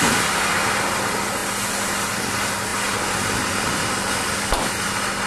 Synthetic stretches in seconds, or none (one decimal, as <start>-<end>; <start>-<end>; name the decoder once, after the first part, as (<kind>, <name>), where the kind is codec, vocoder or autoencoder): none